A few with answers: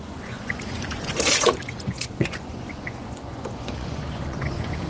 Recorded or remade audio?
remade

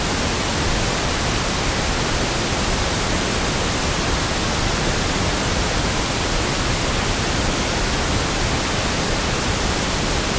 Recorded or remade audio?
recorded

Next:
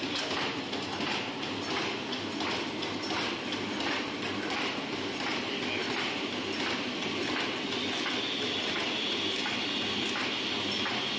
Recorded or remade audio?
recorded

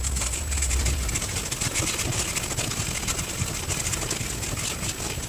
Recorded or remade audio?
recorded